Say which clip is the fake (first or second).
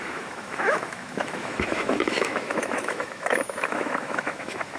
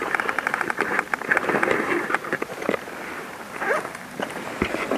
first